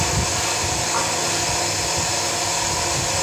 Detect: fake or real real